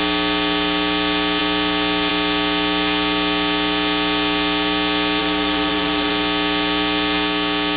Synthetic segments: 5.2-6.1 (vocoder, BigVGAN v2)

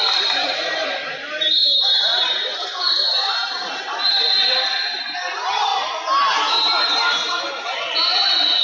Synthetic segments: 0.0-5.7 (vocoder, BigVGAN v2)

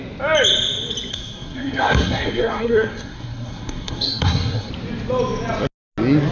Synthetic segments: 1.1-4.7 (codec, SNAC)

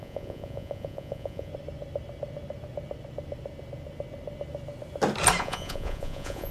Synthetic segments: 0.0-1.5 (vocoder, Vocos); 5.4-6.5

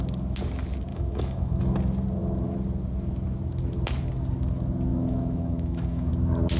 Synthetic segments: 0.9-1.6 (autoencoder, DAC-VAE); 4.9-6.1

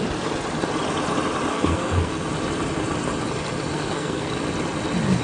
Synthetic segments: 1.5-2.3 (codec, SNAC); 3.7-4.3

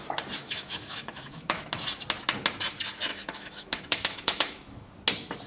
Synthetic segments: 0.4-1.7 (autoencoder, DAC-VAE); 3.1-4.9

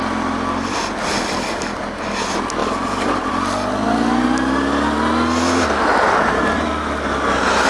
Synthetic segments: none